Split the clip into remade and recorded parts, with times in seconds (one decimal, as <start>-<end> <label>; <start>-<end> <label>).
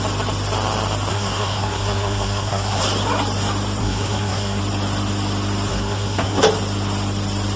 0.0-1.1 recorded; 1.1-2.8 remade; 2.8-3.8 recorded; 3.8-4.6 remade; 4.6-5.7 recorded; 5.7-6.4 remade; 6.4-7.6 recorded